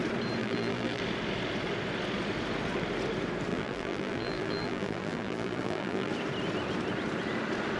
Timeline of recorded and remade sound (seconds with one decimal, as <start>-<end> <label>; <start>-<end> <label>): 0.0-0.4 recorded; 0.4-1.0 remade; 1.0-3.5 recorded; 3.5-6.1 remade; 6.1-7.8 recorded